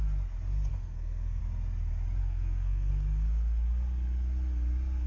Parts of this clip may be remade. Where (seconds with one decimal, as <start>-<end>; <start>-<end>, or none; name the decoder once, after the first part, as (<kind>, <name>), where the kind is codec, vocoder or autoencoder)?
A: 0.7-1.4 (codec, SNAC); 2.2-2.9